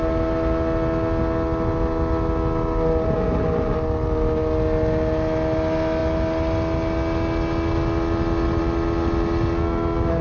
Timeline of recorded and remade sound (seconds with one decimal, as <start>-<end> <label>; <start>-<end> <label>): 0.0-10.2 recorded